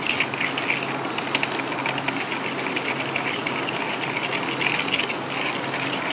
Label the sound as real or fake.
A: real